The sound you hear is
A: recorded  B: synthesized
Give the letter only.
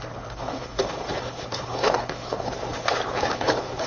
B